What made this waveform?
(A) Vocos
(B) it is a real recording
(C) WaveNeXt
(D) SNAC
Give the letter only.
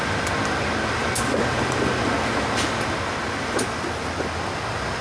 B